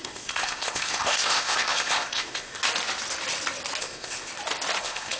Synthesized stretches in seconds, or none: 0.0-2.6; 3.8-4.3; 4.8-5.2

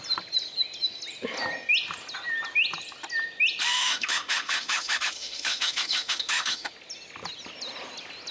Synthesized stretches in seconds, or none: 3.7-6.7

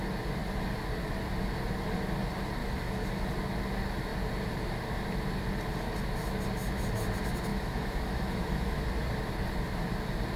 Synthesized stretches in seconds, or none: 2.6-3.3; 7.5-8.9

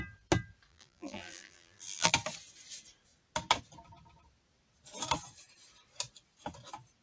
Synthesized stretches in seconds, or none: 0.7-2.1

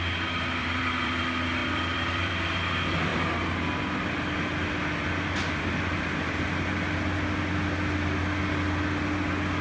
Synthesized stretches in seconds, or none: 0.6-1.2; 1.6-2.3

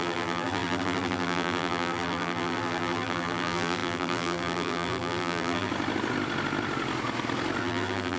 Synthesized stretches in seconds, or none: 0.0-5.7; 7.6-8.2

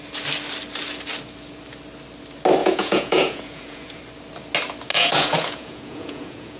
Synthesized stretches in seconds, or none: 2.6-4.0; 4.9-6.6